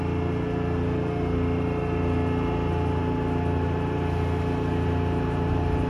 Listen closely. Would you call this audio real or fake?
real